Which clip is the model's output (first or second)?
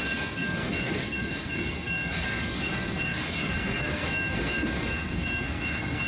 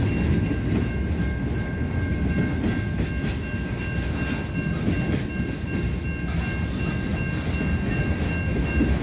first